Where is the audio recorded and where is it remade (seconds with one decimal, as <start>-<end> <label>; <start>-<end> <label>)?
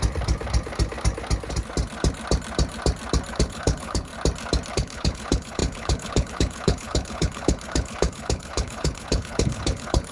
0.0-3.3 recorded; 3.3-4.1 remade; 4.1-4.7 recorded; 4.7-10.1 remade